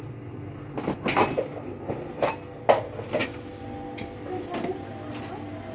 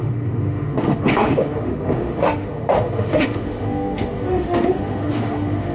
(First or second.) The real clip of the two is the first